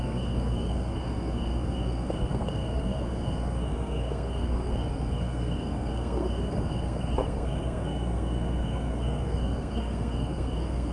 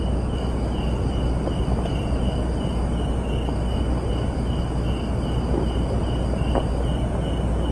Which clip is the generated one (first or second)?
first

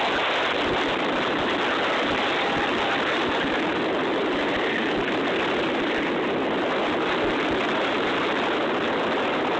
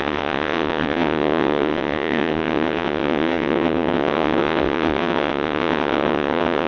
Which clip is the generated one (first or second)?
second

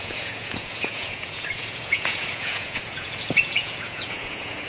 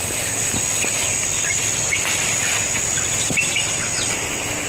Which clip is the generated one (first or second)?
first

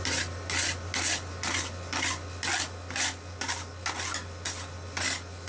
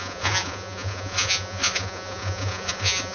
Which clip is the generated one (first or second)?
second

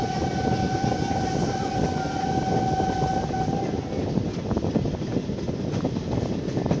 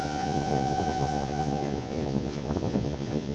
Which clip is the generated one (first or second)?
second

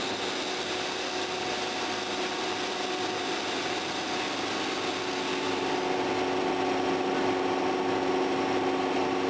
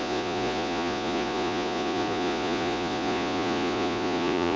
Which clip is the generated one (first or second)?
second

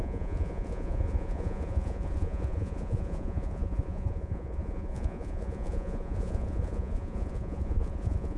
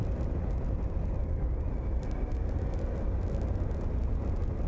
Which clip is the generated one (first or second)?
first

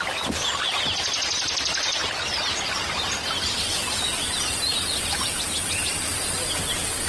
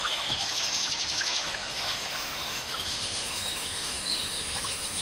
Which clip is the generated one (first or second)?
second